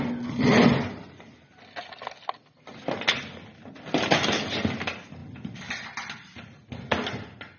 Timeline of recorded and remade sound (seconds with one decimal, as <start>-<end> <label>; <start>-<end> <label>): 0.0-7.6 recorded